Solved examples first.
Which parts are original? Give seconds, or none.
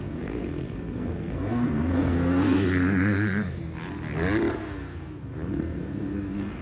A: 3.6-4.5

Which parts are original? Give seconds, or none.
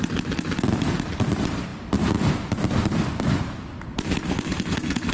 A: 0.0-4.3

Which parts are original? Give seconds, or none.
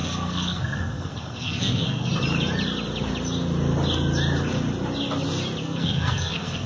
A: 2.1-5.6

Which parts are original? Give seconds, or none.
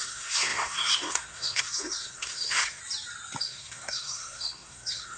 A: 2.8-3.4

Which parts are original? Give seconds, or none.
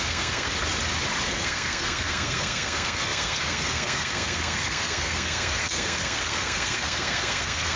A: 0.5-1.3